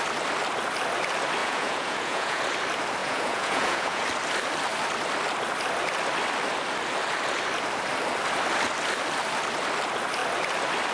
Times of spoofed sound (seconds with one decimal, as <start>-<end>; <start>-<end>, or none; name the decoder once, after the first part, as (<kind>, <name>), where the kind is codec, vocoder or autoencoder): 1.4-2.4 (vocoder, Vocos); 3.0-4.0